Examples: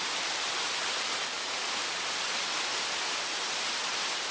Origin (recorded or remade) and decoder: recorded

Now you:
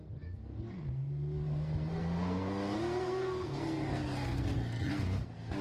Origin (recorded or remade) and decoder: remade, codec, SNAC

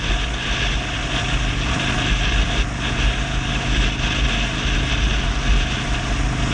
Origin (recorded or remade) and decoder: recorded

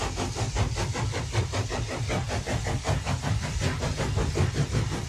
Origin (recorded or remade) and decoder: recorded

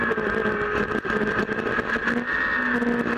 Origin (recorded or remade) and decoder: recorded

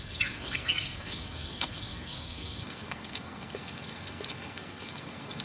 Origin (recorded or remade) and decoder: remade, codec, SNAC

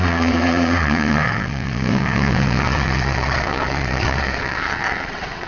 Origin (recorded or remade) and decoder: remade, vocoder, WaveNeXt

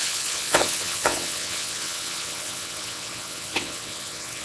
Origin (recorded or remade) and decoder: remade, vocoder, WaveNeXt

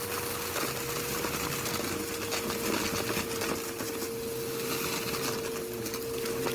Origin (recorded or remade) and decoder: recorded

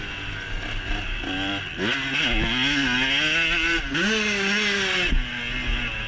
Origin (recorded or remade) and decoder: recorded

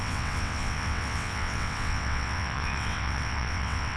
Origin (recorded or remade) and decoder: remade, vocoder, WaveNeXt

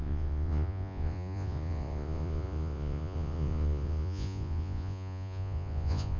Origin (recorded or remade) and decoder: remade, vocoder, Vocos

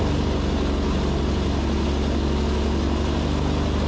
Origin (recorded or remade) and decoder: recorded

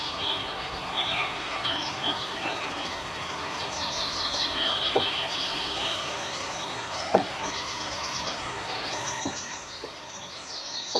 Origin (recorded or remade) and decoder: remade, codec, SNAC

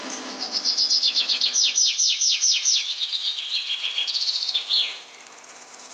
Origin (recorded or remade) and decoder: recorded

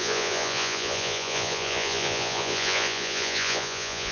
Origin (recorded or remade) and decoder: remade, vocoder, Vocos